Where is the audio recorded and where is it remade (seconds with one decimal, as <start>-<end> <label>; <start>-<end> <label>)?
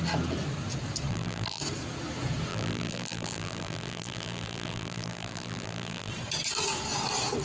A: 0.0-1.1 recorded; 1.1-1.6 remade; 1.6-2.5 recorded; 2.5-6.1 remade; 6.1-7.4 recorded